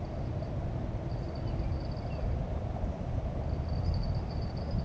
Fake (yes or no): no